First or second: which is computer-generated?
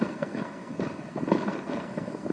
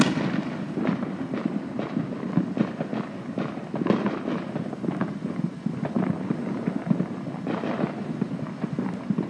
first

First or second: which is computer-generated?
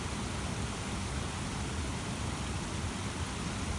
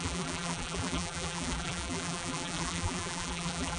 second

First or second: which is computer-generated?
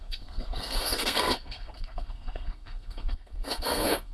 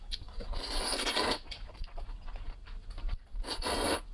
first